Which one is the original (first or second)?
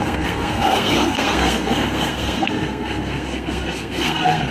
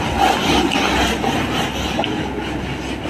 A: second